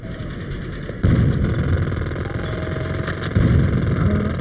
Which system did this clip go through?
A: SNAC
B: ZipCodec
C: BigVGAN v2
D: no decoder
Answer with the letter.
C